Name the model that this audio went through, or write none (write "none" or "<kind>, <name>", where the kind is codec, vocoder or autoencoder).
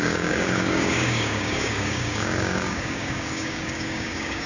codec, DAC